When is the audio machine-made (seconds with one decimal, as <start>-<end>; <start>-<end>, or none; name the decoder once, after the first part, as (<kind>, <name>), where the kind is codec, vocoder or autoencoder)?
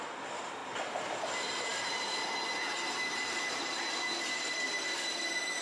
0.0-0.6 (vocoder, BigVGAN v2); 1.2-5.6